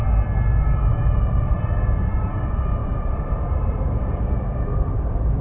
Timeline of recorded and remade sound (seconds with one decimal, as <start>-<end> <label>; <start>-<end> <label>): 0.0-0.9 recorded; 0.9-2.3 remade; 2.3-2.8 recorded; 2.8-5.4 remade